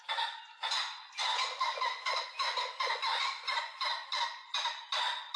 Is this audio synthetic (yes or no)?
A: no